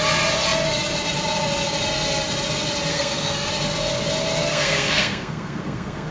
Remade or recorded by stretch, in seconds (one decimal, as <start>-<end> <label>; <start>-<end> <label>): 0.0-2.9 recorded; 2.9-3.5 remade; 3.5-4.5 recorded; 4.5-6.1 remade